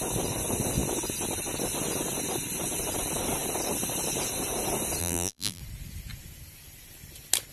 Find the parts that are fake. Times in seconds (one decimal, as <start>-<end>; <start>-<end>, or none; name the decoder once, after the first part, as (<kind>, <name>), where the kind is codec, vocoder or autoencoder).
5.0-5.6 (vocoder, BigVGAN v2)